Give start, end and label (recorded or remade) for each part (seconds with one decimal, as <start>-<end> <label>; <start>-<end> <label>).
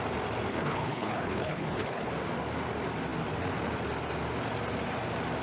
0.0-0.5 recorded; 0.5-2.1 remade; 2.1-5.4 recorded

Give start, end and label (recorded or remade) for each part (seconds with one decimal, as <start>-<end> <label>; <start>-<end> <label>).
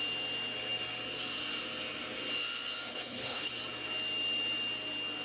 0.0-2.9 recorded; 2.9-3.5 remade; 3.5-5.2 recorded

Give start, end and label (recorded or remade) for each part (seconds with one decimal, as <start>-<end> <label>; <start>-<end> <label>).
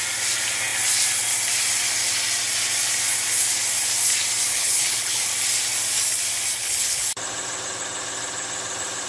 0.0-4.5 recorded; 4.5-5.3 remade; 5.3-6.6 recorded; 6.6-7.1 remade; 7.1-9.1 recorded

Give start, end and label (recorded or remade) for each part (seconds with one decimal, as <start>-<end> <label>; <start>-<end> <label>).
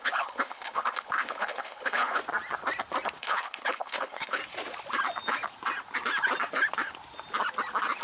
0.0-2.2 remade; 2.2-3.2 recorded; 3.2-4.4 remade; 4.4-8.0 recorded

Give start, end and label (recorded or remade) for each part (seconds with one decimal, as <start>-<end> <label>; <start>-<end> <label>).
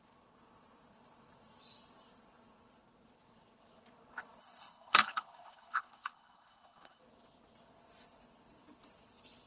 0.0-4.4 recorded; 4.4-7.0 remade; 7.0-9.5 recorded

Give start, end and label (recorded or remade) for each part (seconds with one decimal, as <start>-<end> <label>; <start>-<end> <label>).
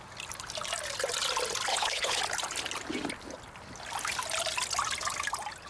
0.0-1.7 recorded; 1.7-2.2 remade; 2.2-5.7 recorded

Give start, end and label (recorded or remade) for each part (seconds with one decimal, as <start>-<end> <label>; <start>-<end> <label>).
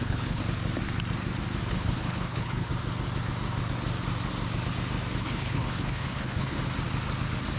0.0-0.4 remade; 0.4-1.7 recorded; 1.7-2.7 remade; 2.7-5.2 recorded; 5.2-6.6 remade; 6.6-7.6 recorded